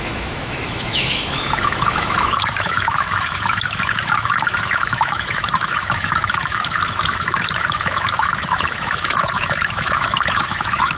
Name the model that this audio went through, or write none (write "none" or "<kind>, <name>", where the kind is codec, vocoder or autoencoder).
autoencoder, DAC-VAE